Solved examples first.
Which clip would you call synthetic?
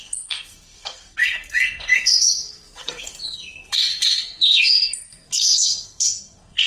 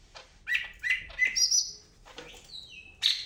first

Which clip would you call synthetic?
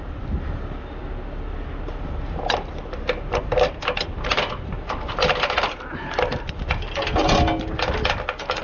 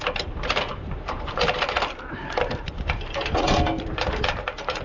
second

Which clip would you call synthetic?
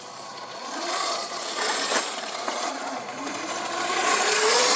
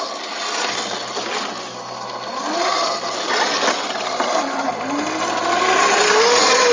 first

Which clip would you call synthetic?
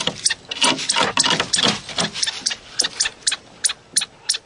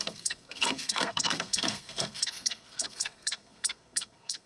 second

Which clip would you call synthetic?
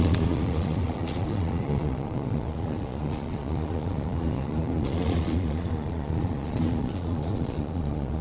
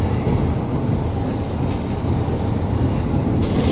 first